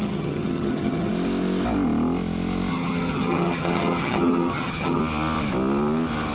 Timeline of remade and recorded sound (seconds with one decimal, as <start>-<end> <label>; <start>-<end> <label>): 0.0-1.1 remade; 1.1-2.7 recorded; 2.7-5.0 remade; 5.0-6.3 recorded